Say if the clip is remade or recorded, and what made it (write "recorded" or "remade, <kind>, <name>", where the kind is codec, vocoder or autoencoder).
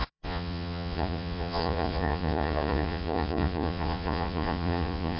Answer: remade, vocoder, Vocos